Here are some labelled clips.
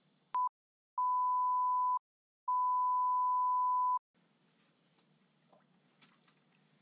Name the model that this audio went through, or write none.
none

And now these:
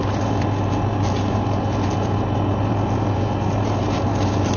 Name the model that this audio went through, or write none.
none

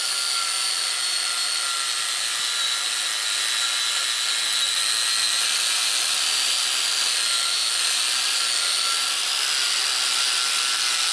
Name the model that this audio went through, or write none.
none